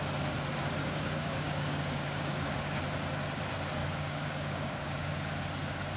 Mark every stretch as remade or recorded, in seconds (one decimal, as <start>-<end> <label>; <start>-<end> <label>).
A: 0.0-0.8 recorded; 0.8-2.8 remade; 2.8-3.8 recorded; 3.8-5.2 remade; 5.2-6.0 recorded

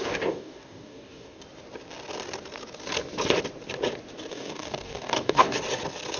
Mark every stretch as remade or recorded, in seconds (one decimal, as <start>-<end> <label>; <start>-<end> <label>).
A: 0.0-1.4 remade; 1.4-4.3 recorded; 4.3-5.6 remade; 5.6-6.2 recorded

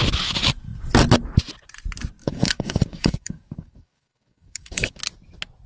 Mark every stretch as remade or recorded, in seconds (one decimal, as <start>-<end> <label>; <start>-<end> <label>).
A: 0.0-2.2 recorded; 2.2-5.0 remade; 5.0-5.7 recorded

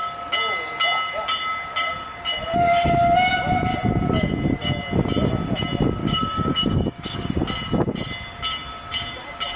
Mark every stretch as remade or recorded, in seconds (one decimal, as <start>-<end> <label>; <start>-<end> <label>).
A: 0.0-6.0 recorded; 6.0-7.3 remade; 7.3-9.6 recorded

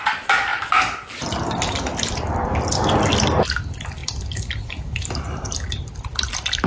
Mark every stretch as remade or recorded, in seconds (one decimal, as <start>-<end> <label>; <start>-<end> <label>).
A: 0.0-6.7 recorded

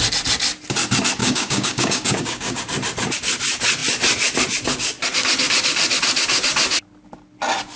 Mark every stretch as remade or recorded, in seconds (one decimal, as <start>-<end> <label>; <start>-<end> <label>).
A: 0.0-1.2 recorded; 1.2-2.6 remade; 2.6-7.8 recorded

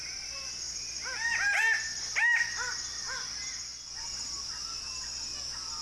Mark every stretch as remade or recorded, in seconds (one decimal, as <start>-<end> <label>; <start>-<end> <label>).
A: 0.0-5.8 recorded

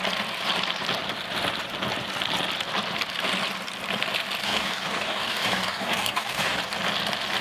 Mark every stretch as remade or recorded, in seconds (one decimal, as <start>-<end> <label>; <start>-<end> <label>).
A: 0.0-4.4 recorded; 4.4-6.6 remade; 6.6-7.4 recorded